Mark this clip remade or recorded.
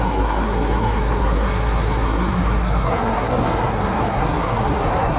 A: remade